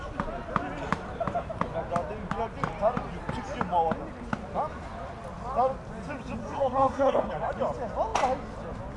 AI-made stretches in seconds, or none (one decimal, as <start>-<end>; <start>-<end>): 6.4-7.3